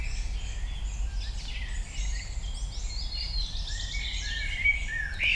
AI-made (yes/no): no